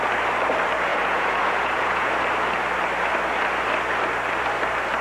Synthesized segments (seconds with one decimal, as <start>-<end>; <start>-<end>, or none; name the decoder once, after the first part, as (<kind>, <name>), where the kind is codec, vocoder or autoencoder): 0.9-2.1 (vocoder, Vocos)